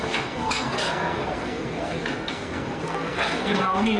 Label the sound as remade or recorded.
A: remade